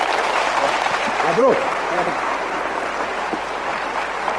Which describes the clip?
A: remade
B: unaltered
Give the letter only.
A